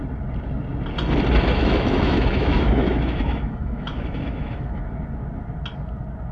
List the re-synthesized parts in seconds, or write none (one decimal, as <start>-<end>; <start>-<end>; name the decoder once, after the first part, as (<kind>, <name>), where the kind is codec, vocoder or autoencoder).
1.6-4.8 (autoencoder, DAC-VAE)